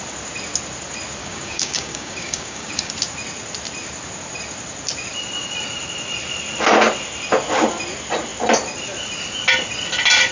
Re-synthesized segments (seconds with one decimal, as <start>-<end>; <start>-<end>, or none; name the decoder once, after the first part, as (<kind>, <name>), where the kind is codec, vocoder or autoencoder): 1.2-2.9 (codec, DAC)